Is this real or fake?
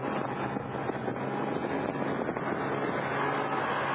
real